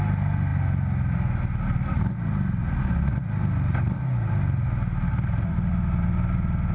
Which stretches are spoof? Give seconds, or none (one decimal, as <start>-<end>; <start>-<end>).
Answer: none